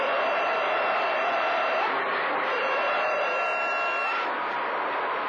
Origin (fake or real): real